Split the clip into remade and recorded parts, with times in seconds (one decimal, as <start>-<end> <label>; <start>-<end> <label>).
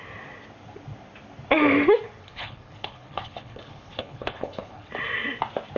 0.0-2.2 recorded; 2.2-4.9 remade; 4.9-5.8 recorded